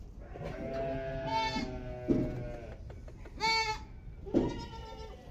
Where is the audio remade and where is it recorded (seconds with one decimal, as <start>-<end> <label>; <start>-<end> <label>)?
0.0-5.3 recorded